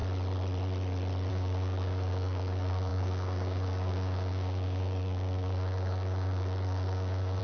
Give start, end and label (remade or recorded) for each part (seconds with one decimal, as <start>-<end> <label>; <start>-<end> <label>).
0.0-1.3 recorded; 1.3-7.4 remade